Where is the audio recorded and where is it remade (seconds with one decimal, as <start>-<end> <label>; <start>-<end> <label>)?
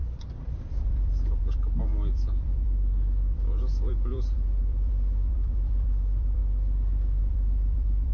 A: 0.0-6.4 remade; 6.4-7.2 recorded; 7.2-8.1 remade